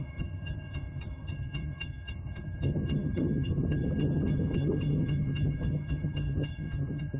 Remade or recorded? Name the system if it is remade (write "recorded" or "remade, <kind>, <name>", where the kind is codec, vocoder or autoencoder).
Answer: remade, vocoder, HiFi-GAN